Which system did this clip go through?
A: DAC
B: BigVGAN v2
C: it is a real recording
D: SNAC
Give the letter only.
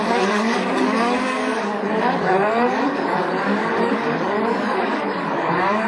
A